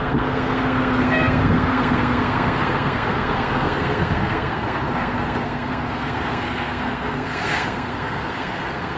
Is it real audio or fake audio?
fake